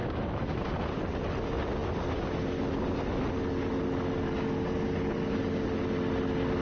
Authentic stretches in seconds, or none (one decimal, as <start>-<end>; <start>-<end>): 0.7-6.6